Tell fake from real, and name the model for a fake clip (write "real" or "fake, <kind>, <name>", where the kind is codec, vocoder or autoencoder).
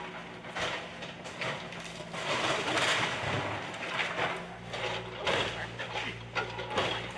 real